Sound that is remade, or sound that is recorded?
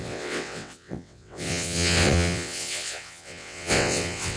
remade